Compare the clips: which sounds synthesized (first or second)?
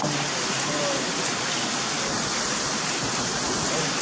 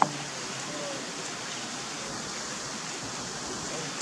second